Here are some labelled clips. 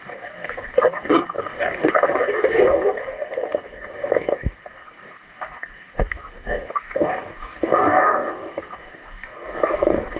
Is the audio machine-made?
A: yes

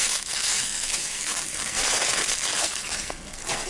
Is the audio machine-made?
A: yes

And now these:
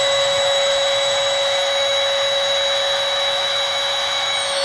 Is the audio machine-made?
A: yes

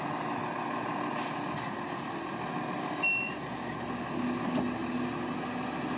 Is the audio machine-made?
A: no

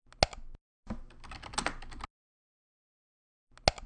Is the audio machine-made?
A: no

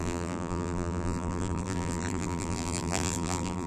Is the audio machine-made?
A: yes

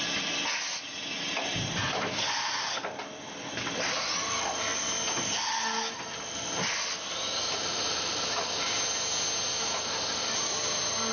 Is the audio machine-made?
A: no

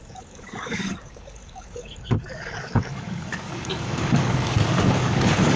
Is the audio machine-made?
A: yes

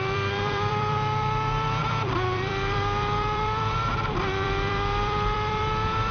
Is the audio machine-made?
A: yes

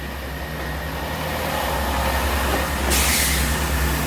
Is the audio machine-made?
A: no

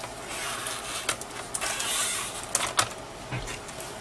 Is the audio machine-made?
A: no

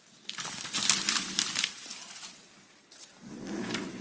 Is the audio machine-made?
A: no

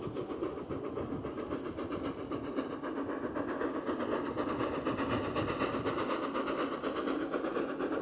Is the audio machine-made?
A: no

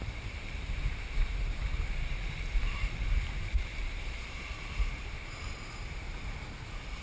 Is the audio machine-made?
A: yes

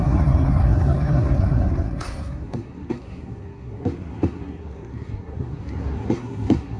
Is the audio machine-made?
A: yes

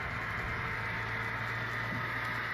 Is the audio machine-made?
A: no